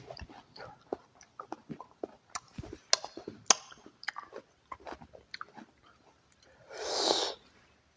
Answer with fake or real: real